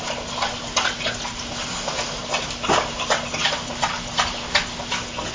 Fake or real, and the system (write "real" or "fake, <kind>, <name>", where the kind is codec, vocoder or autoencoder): real